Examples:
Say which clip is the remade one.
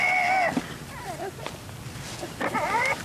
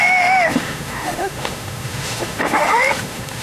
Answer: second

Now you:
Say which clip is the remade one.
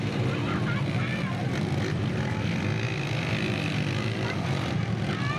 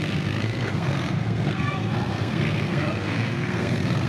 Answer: second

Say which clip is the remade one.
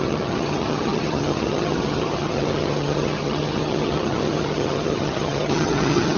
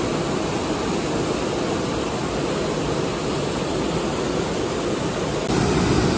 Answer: first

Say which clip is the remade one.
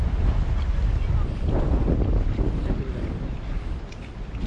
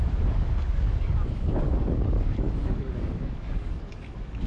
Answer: second